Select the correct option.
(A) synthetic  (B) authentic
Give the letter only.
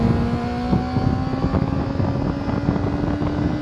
B